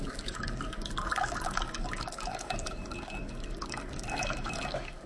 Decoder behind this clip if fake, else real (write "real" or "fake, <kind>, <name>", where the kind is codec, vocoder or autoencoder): fake, codec, DAC